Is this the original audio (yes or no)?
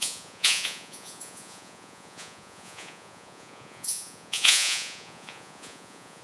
no